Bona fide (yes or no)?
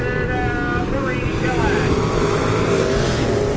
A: yes